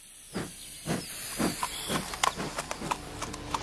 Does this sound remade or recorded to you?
recorded